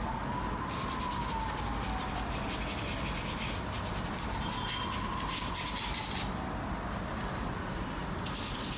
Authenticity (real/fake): real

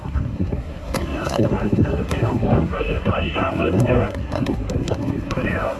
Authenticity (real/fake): fake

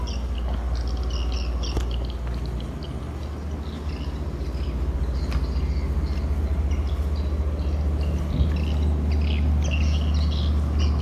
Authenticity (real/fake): real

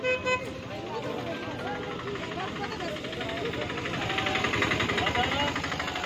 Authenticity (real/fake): real